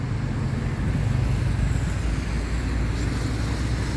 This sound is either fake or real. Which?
real